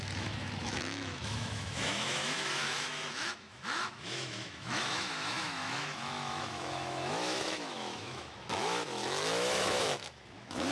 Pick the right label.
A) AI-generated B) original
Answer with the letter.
A